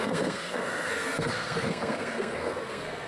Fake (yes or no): yes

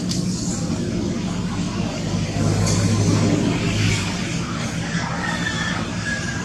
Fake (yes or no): yes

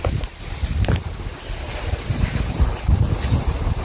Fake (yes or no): no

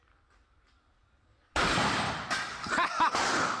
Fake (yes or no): no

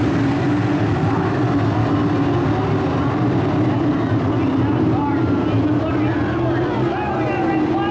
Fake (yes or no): no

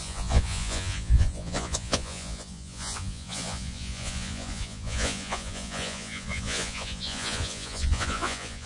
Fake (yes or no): yes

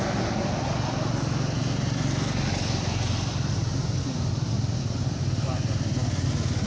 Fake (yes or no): no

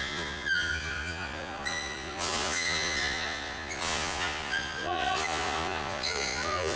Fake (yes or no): yes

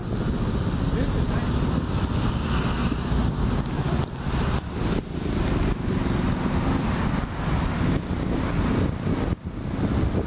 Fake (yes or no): no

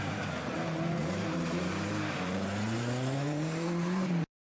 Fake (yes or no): yes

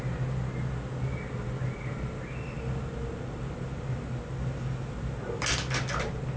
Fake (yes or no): no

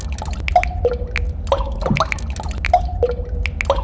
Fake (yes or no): no